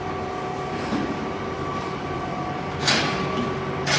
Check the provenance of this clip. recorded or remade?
recorded